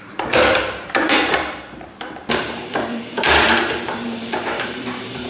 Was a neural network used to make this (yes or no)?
yes